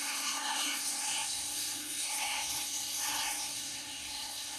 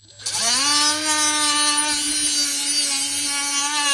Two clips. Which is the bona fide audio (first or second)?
second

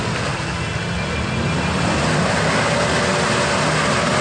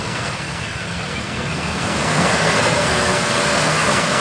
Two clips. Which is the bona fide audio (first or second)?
first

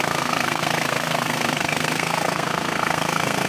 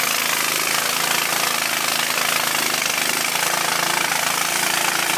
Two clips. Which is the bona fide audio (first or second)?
second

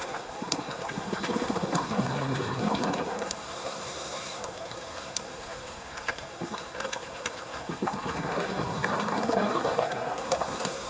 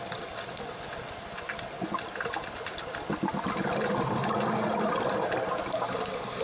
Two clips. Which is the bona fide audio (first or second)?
second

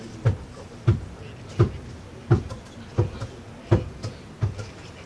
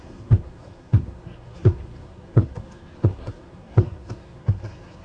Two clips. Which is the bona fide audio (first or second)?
first